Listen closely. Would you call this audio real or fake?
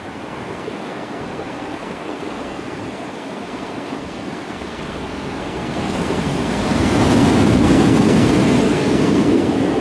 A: fake